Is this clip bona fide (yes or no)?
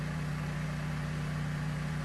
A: yes